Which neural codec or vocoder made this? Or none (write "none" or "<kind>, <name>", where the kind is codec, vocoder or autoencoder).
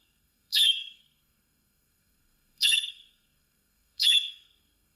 codec, SNAC